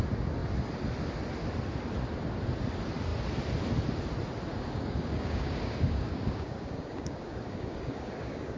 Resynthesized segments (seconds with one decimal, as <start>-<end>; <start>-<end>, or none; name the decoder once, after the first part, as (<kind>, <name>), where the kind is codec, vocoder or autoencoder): 4.5-8.6 (codec, DAC)